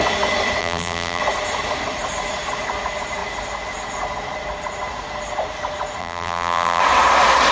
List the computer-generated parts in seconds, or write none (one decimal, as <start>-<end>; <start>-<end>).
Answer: 0.6-1.2; 6.0-6.8